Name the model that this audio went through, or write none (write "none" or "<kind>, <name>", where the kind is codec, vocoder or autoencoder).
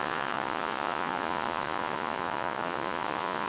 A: vocoder, Vocos